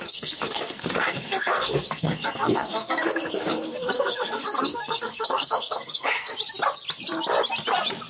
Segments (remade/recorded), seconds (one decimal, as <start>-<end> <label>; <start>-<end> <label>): 0.0-6.3 remade; 6.3-8.1 recorded